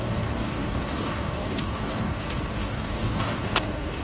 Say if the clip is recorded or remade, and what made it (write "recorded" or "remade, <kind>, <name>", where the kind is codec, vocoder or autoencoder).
remade, codec, DAC